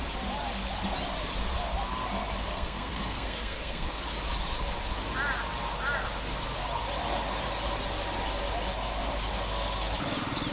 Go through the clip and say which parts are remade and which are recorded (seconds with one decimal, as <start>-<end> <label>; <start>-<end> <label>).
0.0-2.5 recorded; 2.5-4.0 remade; 4.0-10.5 recorded